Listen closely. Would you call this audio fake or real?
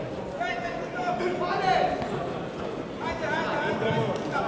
real